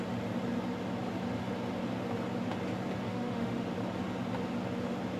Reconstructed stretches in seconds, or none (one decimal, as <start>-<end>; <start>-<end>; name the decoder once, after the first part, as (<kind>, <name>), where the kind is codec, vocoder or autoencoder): 3.0-3.7 (autoencoder, DAC-VAE)